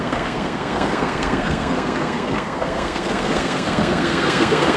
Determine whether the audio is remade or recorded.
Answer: remade